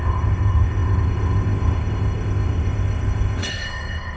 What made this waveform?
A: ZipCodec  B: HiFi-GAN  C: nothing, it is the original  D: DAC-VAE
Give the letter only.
A